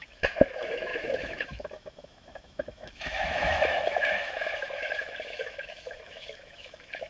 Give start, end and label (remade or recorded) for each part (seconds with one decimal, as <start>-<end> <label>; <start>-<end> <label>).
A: 0.0-7.1 remade